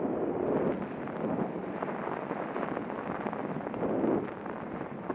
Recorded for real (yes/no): yes